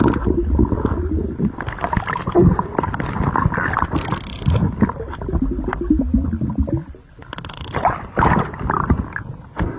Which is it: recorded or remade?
recorded